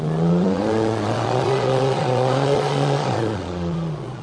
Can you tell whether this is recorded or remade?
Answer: remade